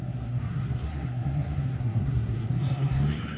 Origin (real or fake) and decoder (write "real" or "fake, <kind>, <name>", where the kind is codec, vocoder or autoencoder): fake, codec, SNAC